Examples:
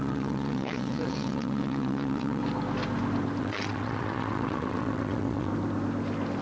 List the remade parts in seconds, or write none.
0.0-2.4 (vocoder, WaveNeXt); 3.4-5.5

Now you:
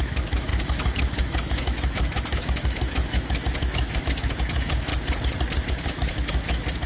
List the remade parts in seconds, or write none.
0.0-4.9 (autoencoder, DAC-VAE); 5.6-6.9

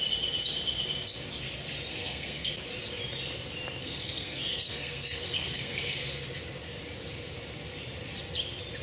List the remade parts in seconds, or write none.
1.9-2.5 (codec, SNAC); 3.8-6.2

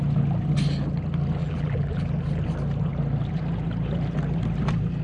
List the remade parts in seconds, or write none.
1.4-2.1 (vocoder, BigVGAN v2)

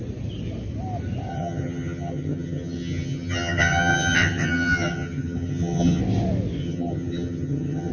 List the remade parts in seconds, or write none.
1.3-6.0 (vocoder, HiFi-GAN); 6.6-7.9

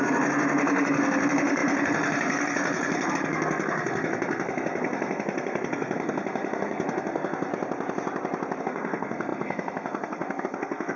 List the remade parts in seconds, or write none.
0.0-7.5 (codec, SNAC); 8.6-11.0

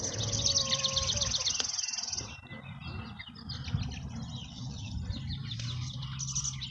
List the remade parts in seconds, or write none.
4.4-4.9 (vocoder, WaveNeXt)